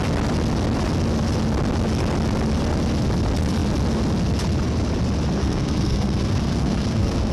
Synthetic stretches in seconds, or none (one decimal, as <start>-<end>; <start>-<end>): 5.4-7.3